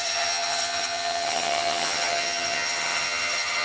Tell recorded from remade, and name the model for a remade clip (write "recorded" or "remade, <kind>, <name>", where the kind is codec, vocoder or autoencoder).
remade, vocoder, HiFi-GAN